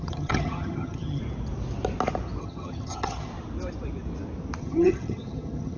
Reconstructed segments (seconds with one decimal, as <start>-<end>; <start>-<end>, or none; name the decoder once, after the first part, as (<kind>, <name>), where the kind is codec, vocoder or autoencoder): 0.0-1.2 (vocoder, HiFi-GAN); 2.4-3.3; 4.6-5.8